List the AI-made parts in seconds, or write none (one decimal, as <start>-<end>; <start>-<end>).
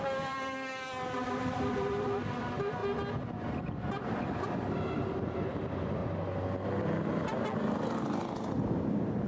0.0-2.8; 4.1-6.0; 6.8-7.3; 8.9-9.3